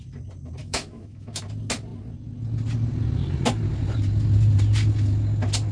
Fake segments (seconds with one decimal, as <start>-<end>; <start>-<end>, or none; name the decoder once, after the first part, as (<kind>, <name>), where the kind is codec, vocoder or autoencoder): 0.6-1.4 (autoencoder, DAC-VAE)

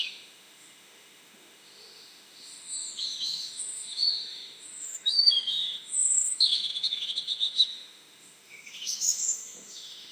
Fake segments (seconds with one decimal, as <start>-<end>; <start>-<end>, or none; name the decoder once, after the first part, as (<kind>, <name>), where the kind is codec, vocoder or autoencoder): 0.0-10.1 (autoencoder, DAC-VAE)

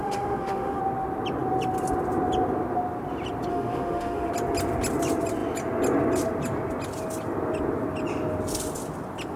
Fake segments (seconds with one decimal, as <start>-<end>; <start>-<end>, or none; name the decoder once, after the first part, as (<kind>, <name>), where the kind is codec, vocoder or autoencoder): 0.0-0.8 (autoencoder, DAC-VAE); 3.5-4.3